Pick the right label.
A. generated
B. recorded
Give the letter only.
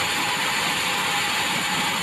B